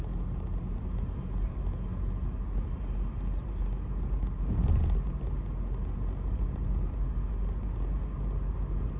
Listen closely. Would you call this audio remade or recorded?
recorded